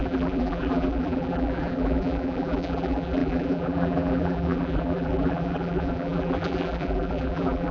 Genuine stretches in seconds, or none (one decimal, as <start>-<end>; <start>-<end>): none